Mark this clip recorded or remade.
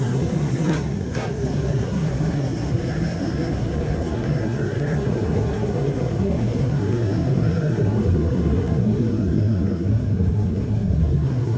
remade